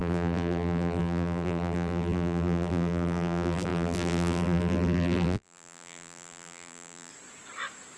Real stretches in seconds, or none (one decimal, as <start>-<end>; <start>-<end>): 7.1-8.0